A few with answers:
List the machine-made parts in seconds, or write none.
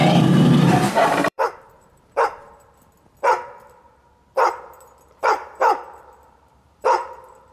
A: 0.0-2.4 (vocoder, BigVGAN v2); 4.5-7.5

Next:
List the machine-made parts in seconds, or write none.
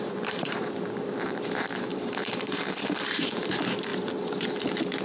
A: 0.0-5.0 (vocoder, BigVGAN v2)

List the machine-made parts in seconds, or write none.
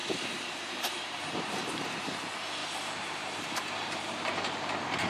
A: 0.0-1.7 (vocoder, BigVGAN v2); 2.6-4.3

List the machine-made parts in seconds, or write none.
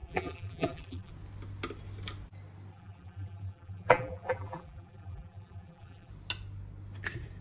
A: 0.0-1.1 (vocoder, BigVGAN v2); 2.7-6.1